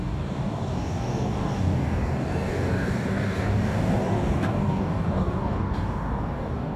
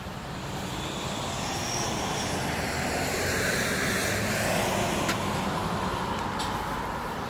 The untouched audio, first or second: second